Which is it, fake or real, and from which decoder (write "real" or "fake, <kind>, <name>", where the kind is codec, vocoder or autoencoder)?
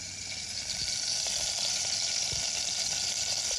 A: real